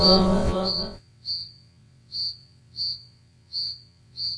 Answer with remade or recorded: remade